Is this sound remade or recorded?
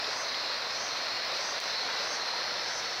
recorded